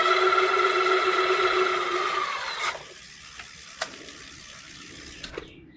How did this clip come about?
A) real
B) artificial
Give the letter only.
A